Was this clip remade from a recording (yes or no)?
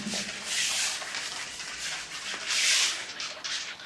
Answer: no